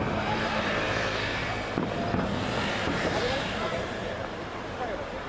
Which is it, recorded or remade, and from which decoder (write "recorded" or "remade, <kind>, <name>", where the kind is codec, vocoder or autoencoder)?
remade, vocoder, BigVGAN v2